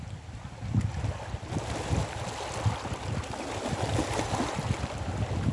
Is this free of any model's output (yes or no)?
yes